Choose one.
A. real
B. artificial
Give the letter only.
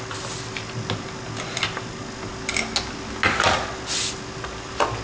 A